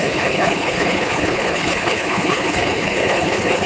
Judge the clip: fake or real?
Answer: fake